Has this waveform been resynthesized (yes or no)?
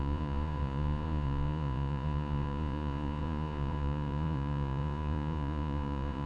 yes